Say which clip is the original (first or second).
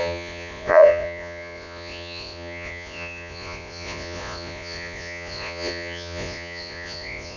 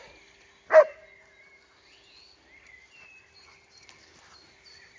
second